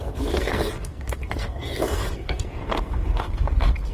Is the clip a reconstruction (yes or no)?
yes